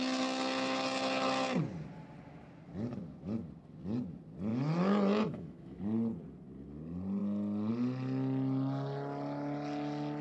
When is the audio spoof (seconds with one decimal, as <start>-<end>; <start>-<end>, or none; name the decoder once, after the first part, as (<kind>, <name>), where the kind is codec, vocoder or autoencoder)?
4.5-5.8 (autoencoder, DAC-VAE)